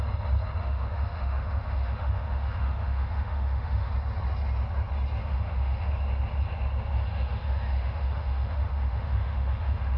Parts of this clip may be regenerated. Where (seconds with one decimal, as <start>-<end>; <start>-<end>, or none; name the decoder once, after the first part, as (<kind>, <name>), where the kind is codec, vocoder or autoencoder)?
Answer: 0.6-3.9 (autoencoder, DAC-VAE); 5.2-5.9; 7.1-10.0